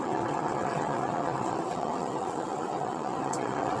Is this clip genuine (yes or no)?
no